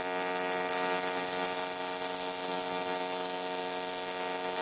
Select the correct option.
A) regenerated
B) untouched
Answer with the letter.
B